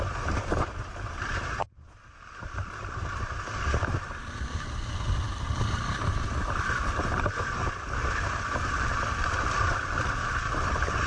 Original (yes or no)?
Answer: yes